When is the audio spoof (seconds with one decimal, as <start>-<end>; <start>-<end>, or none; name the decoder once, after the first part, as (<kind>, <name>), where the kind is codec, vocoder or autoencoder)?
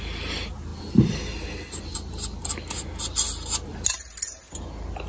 none